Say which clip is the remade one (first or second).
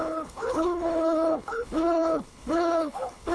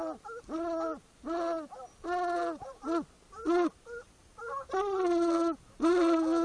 first